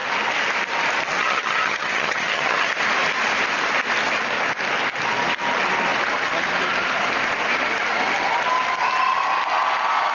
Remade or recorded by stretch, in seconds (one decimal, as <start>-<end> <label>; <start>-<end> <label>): 0.0-1.2 recorded; 1.2-2.7 remade; 2.7-10.1 recorded